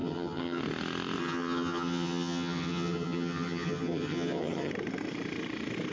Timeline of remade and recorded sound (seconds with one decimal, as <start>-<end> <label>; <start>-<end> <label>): 0.0-0.6 remade; 0.6-1.2 recorded; 1.2-4.7 remade; 4.7-5.9 recorded